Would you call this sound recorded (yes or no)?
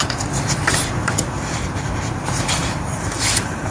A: no